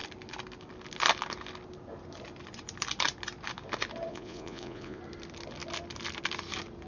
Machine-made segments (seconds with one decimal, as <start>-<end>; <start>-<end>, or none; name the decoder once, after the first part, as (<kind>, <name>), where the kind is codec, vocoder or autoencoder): 4.1-5.0 (vocoder, Vocos)

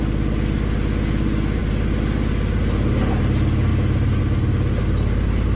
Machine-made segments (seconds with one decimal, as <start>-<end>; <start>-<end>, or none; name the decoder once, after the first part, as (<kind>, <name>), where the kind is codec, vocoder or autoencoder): none